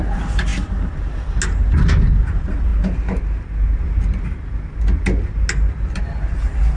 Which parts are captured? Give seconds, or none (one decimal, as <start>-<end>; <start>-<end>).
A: 0.0-6.8